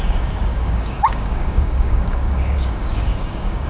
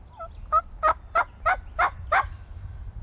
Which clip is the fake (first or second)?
first